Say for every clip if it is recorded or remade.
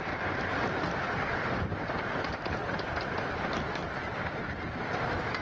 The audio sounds remade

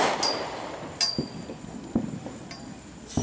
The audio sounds recorded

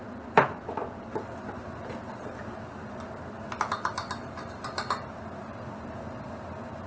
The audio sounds remade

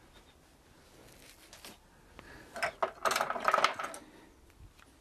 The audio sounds recorded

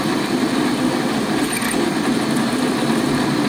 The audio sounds recorded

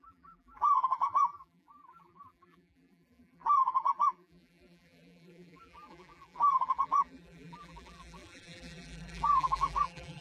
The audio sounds remade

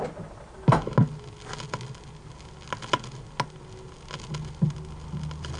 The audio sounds recorded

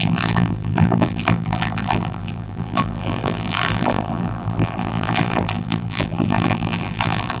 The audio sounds remade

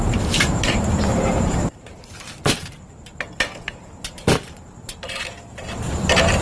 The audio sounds remade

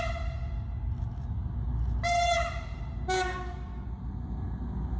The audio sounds recorded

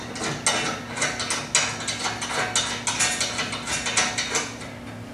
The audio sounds recorded